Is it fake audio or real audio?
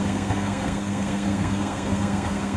fake